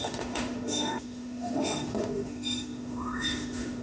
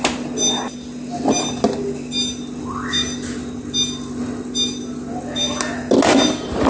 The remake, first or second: first